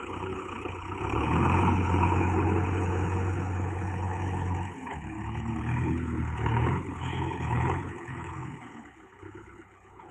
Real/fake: fake